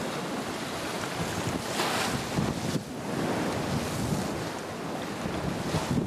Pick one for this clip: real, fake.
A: real